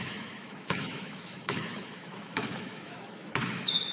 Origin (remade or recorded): remade